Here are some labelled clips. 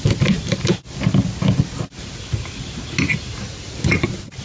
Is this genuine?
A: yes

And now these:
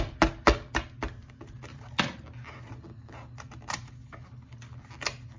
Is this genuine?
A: yes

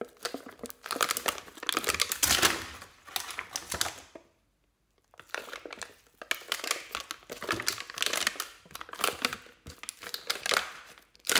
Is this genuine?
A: yes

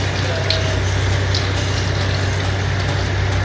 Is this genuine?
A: yes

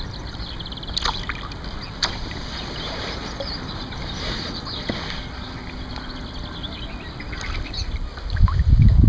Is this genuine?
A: yes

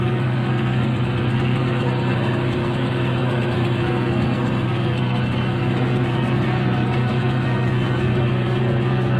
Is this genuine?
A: no